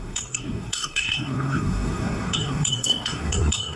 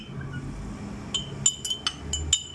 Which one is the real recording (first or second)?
second